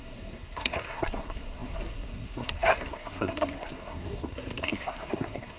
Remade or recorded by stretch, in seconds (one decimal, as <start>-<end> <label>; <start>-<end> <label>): 0.0-5.6 remade